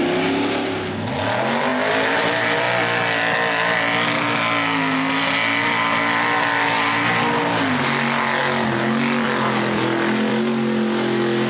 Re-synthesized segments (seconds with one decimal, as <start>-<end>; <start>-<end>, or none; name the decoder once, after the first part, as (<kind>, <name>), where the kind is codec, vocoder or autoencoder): none